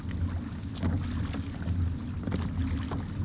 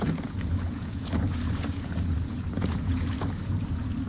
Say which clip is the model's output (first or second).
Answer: second